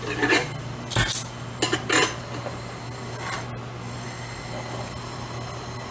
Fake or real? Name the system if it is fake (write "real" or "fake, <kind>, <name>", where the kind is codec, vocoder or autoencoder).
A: real